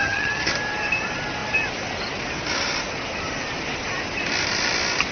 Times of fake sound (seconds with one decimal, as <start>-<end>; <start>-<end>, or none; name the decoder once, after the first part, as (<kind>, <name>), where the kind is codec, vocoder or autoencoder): 0.0-0.5 (vocoder, HiFi-GAN)

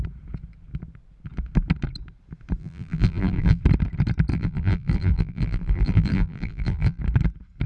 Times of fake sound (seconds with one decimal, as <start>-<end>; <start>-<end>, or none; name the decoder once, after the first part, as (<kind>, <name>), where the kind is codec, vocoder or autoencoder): 2.6-3.6 (vocoder, BigVGAN v2); 4.3-7.0

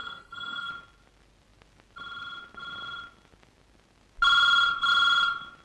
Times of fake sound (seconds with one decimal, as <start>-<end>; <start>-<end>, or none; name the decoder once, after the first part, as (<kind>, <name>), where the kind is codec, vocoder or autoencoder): 0.0-0.7 (codec, SNAC)

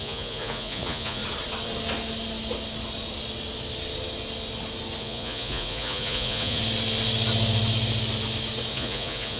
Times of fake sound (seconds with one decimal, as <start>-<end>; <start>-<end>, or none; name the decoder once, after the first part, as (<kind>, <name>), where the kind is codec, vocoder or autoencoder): 0.0-1.2 (vocoder, Vocos); 5.0-6.6; 8.7-9.4